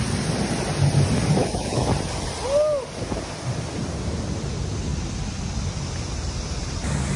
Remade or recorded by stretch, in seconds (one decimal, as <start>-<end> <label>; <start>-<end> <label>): 0.0-1.4 recorded; 1.4-1.9 remade; 1.9-7.2 recorded